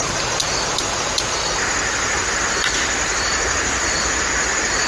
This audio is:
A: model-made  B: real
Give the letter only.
B